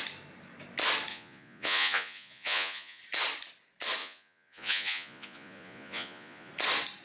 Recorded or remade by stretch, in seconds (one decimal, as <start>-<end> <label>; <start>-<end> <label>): 0.0-1.1 recorded; 1.1-3.0 remade; 3.0-4.0 recorded; 4.0-6.5 remade; 6.5-7.0 recorded

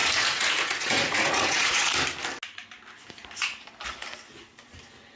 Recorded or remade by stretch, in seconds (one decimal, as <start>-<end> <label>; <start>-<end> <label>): 0.0-1.9 remade; 1.9-5.2 recorded

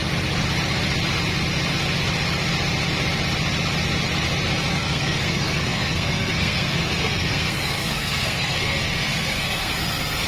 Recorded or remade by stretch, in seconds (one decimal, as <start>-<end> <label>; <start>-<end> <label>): 0.0-4.7 recorded; 4.7-10.3 remade

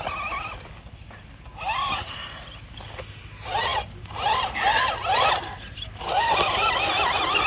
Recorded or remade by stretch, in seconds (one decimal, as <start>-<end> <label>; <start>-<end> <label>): 0.0-7.5 recorded

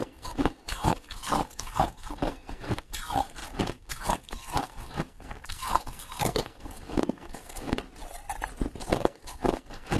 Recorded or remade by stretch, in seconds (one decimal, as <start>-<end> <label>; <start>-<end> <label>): 0.0-7.8 remade; 7.8-8.8 recorded; 8.8-10.0 remade